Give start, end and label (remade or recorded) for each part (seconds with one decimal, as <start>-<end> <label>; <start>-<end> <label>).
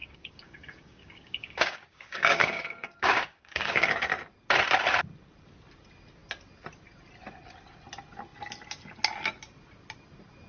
0.0-4.1 remade; 4.1-10.5 recorded